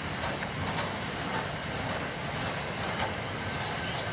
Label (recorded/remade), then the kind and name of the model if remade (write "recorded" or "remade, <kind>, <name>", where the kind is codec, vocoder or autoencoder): recorded